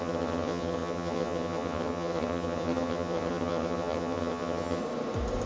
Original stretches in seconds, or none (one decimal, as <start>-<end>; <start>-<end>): 4.8-5.5